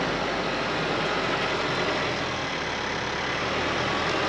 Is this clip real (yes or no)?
yes